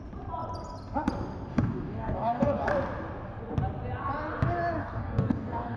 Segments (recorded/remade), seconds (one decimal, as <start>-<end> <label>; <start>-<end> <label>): 0.0-1.5 recorded; 1.5-2.7 remade; 2.7-4.8 recorded; 4.8-5.8 remade